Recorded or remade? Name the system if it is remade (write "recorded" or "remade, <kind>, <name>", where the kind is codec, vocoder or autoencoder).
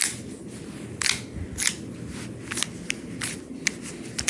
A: recorded